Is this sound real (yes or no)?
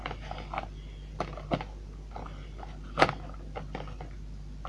yes